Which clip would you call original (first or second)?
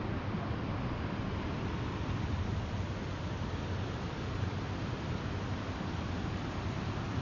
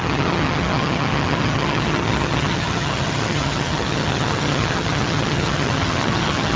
first